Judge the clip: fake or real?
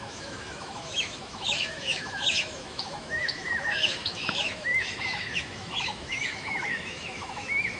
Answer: fake